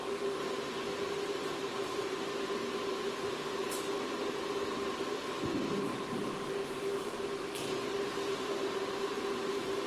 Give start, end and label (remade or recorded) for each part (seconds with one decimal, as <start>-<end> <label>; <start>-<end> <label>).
0.0-9.9 recorded